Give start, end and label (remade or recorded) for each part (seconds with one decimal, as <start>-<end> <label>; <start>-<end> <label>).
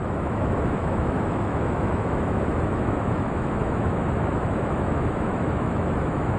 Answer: 0.0-6.4 remade